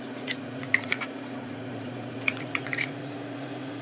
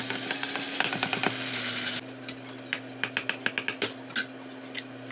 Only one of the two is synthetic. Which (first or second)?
first